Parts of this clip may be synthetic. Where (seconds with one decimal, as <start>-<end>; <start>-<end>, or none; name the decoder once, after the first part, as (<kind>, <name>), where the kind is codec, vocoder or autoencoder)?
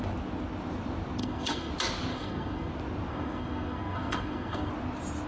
1.2-1.7 (codec, SNAC); 2.1-2.7; 3.1-4.7